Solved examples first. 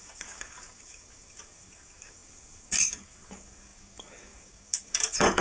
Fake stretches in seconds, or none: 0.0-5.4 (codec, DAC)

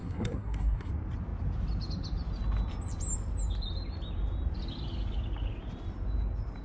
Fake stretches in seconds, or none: 0.0-0.9 (codec, SNAC)

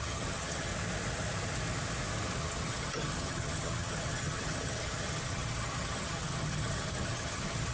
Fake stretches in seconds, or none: 0.0-0.7 (vocoder, HiFi-GAN); 2.4-7.7

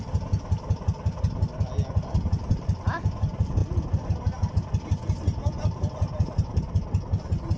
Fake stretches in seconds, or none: none

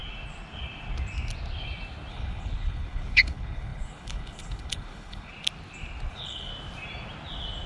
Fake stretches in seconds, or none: 2.1-5.3 (codec, HILCodec); 6.1-6.5

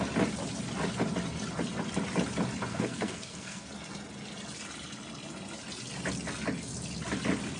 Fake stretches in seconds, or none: 2.7-3.7 (codec, SNAC)

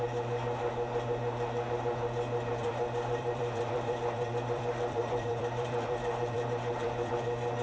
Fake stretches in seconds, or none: 2.5-7.1 (vocoder, BigVGAN v2)